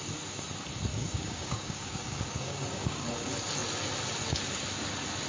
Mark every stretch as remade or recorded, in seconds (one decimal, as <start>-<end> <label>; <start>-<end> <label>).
0.0-0.9 recorded; 0.9-3.1 remade; 3.1-5.3 recorded